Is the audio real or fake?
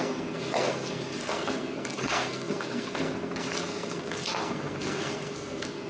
fake